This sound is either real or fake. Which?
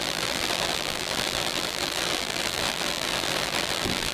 fake